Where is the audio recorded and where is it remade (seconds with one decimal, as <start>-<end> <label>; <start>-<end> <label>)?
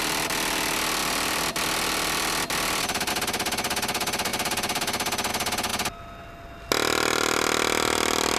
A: 0.0-1.0 recorded; 1.0-3.1 remade; 3.1-4.3 recorded; 4.3-5.3 remade; 5.3-8.4 recorded